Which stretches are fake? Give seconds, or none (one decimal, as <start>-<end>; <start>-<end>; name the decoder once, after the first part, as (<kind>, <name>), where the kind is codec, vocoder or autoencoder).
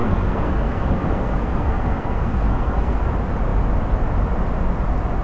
0.0-3.1 (codec, SNAC)